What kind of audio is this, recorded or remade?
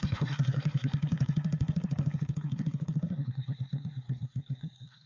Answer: remade